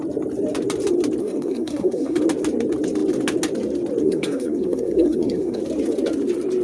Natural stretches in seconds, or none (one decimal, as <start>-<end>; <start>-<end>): 0.0-1.2; 2.2-4.0; 5.6-6.6